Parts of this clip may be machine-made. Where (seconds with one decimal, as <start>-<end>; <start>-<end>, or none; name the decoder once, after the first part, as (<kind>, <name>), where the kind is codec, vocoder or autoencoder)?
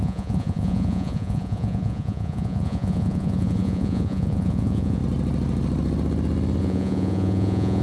0.0-5.0 (vocoder, Vocos); 6.6-7.8